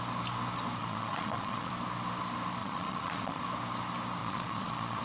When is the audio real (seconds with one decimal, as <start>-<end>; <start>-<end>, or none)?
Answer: 0.0-0.8; 1.7-2.6; 3.4-4.2